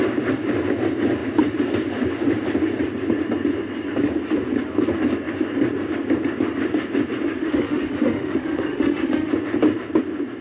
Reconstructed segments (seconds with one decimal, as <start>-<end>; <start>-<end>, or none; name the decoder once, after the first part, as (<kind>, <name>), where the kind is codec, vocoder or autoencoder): 7.4-9.3 (autoencoder, DAC-VAE)